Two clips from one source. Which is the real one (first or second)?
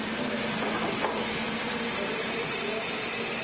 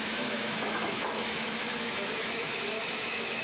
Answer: first